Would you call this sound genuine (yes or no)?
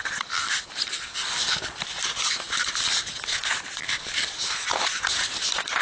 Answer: yes